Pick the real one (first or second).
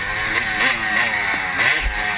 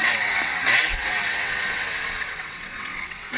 first